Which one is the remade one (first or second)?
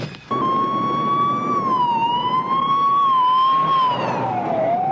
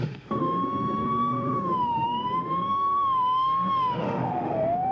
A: second